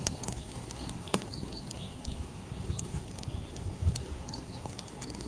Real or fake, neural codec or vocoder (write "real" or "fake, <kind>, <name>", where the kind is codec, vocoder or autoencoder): fake, codec, SNAC